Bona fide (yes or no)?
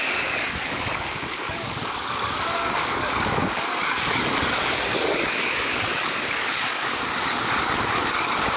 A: no